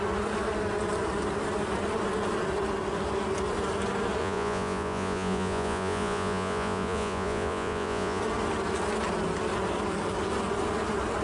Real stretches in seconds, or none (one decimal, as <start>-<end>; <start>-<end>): 0.0-4.2; 8.2-11.2